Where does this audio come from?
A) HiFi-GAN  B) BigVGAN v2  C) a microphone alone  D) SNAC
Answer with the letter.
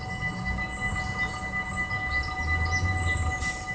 C